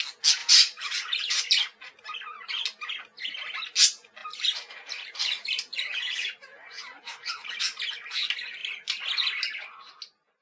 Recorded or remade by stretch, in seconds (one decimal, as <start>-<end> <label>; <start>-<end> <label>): 0.0-0.4 recorded; 0.4-2.5 remade; 2.5-4.2 recorded; 4.2-7.6 remade; 7.6-10.4 recorded